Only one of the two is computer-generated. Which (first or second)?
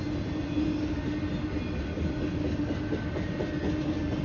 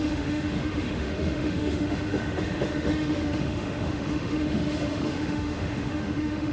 second